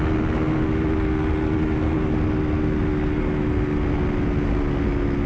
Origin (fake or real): real